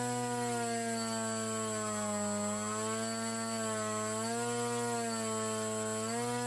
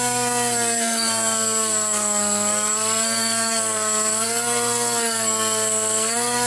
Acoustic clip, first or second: first